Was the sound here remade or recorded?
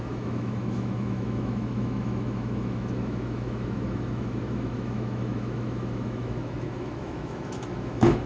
remade